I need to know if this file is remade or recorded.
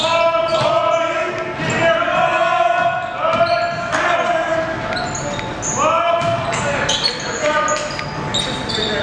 recorded